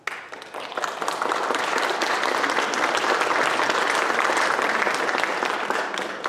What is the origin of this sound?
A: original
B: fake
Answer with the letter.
A